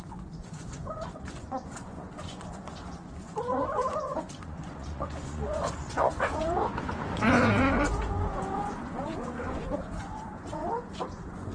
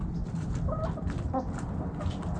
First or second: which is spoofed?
first